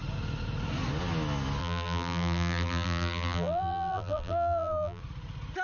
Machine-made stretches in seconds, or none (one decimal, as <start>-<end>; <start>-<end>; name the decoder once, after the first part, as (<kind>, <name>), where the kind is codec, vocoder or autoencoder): 1.6-5.0 (vocoder, BigVGAN v2)